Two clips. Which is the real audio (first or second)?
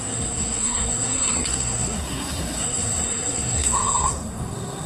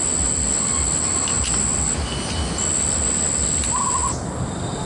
second